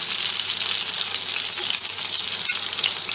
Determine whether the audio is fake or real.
real